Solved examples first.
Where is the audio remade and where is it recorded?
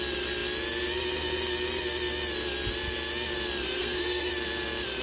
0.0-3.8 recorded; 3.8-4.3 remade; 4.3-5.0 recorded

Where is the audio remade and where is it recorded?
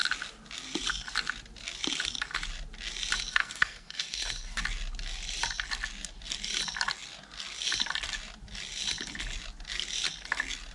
0.0-3.3 recorded; 3.3-4.6 remade; 4.6-10.7 recorded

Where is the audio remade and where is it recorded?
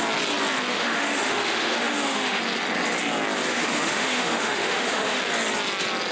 0.0-0.7 recorded; 0.7-2.4 remade; 2.4-3.5 recorded; 3.5-5.2 remade; 5.2-6.1 recorded